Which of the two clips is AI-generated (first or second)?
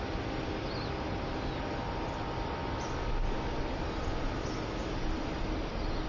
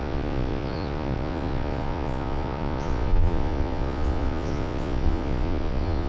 second